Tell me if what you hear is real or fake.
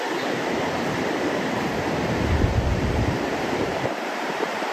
fake